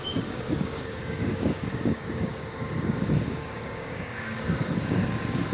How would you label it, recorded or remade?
remade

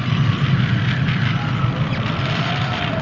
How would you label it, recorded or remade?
recorded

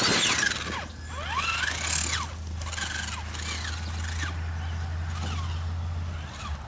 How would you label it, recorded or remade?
recorded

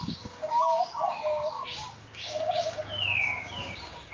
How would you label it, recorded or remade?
remade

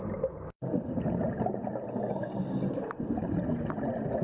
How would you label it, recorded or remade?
recorded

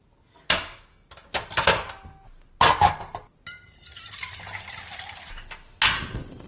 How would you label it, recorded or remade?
recorded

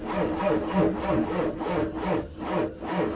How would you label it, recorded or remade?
recorded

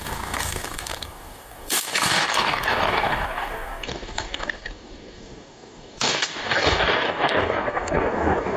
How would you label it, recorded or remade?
remade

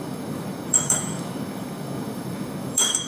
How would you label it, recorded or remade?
remade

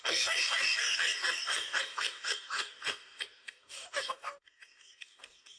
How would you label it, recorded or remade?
remade